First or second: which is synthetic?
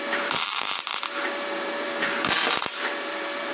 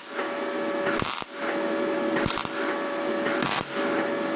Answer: first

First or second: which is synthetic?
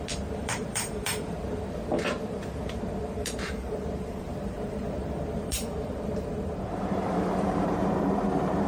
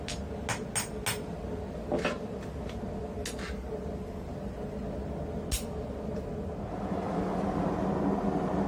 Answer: first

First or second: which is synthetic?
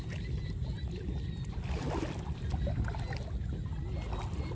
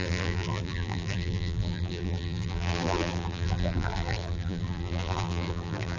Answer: second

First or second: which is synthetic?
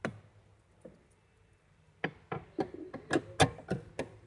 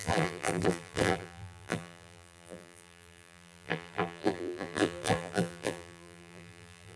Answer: second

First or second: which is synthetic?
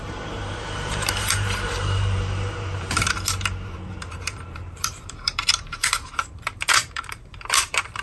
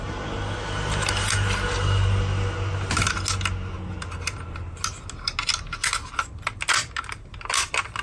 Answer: first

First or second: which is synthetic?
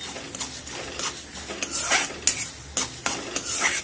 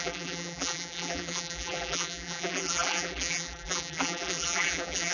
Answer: second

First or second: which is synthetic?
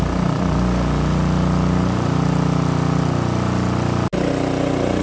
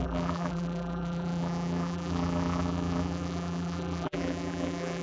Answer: second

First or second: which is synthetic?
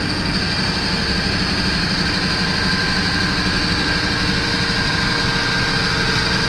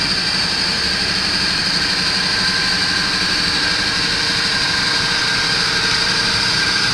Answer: second